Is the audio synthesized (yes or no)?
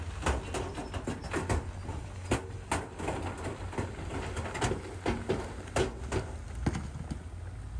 no